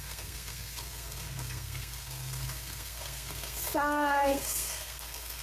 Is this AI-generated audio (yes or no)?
yes